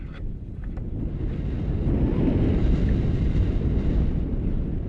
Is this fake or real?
real